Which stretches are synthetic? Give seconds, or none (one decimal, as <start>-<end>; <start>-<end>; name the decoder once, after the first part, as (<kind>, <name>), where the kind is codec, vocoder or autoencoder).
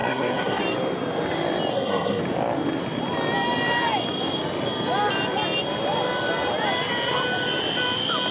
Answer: 0.0-0.6 (codec, SNAC); 1.7-2.2